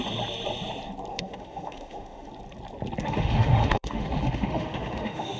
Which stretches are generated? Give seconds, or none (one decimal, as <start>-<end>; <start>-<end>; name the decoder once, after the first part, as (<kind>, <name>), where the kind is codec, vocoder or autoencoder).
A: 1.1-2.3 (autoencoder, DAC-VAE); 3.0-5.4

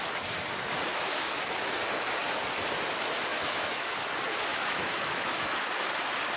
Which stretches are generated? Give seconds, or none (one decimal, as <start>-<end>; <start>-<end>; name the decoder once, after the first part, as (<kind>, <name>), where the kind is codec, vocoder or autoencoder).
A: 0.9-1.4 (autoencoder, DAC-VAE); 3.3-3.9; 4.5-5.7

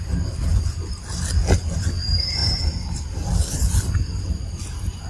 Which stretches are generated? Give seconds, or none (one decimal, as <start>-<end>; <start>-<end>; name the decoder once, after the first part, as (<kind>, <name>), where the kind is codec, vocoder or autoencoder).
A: none